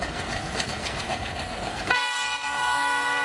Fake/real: fake